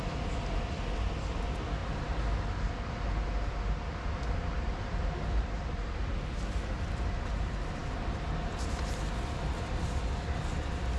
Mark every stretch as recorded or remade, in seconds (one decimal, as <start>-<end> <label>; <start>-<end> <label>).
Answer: 0.0-11.0 recorded